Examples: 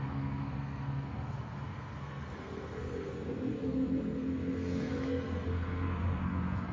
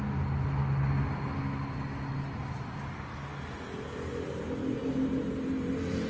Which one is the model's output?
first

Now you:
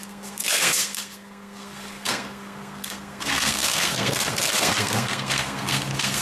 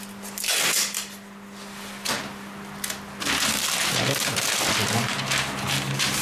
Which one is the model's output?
first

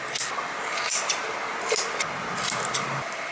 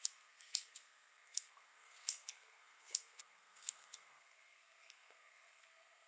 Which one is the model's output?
second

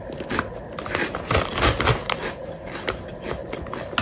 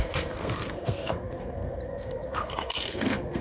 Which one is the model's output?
second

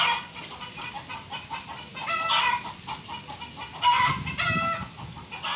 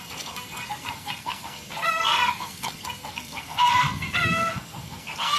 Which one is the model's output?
second